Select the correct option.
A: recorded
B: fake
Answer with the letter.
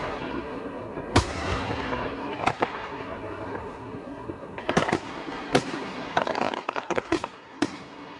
B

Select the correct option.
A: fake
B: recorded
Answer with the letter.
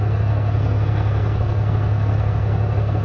A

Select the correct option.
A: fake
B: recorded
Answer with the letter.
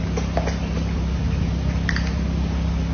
B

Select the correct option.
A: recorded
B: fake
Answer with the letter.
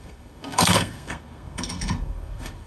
B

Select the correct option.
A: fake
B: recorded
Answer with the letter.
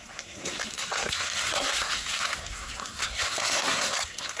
A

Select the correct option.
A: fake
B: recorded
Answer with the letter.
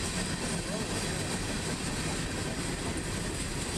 B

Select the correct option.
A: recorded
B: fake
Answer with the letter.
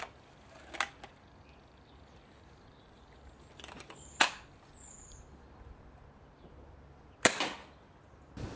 A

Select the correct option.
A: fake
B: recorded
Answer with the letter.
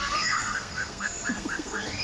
A